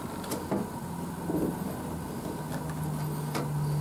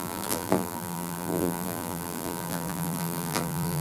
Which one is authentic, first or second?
first